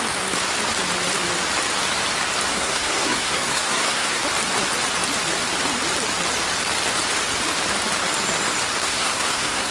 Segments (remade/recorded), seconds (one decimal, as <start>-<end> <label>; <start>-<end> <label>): 0.0-2.5 recorded; 2.5-4.2 remade; 4.2-8.8 recorded; 8.8-9.7 remade